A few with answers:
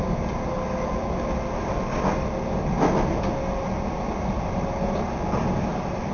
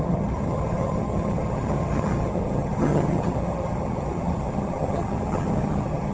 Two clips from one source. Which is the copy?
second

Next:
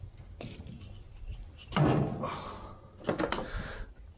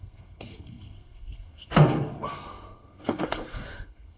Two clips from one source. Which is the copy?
second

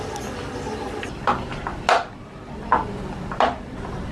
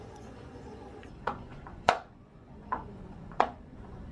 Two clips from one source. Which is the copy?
second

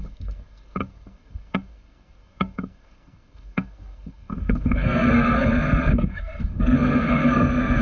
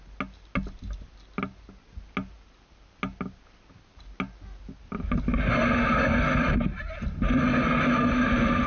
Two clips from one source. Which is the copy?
first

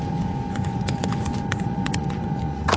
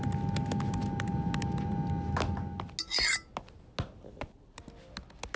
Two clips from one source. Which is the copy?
first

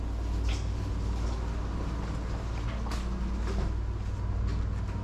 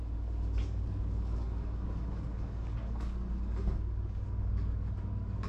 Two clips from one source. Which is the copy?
second